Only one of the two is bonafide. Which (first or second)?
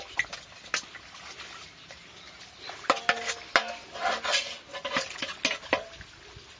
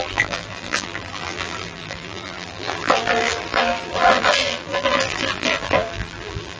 first